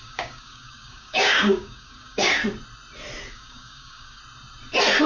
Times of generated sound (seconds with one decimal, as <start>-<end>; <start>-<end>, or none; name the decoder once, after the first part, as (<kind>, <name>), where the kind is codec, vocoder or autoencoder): 0.0-2.4 (codec, DAC); 3.3-4.2